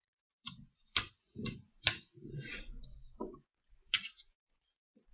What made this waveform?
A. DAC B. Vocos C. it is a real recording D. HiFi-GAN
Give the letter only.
B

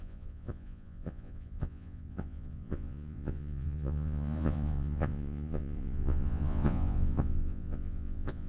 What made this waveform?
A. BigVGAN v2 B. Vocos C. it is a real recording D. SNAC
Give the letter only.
B